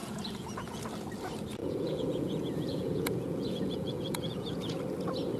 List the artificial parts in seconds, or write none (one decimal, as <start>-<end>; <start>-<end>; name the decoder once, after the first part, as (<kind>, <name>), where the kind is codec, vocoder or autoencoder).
0.0-0.8 (vocoder, Vocos); 1.6-4.8